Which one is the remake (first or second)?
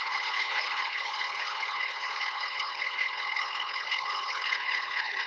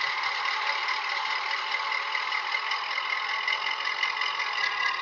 first